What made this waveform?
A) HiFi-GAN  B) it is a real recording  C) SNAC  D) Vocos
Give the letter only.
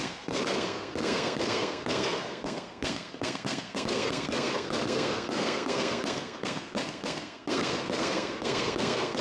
C